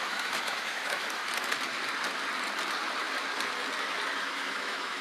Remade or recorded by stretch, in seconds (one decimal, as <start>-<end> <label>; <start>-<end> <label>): 0.0-1.2 remade; 1.2-4.2 recorded; 4.2-5.0 remade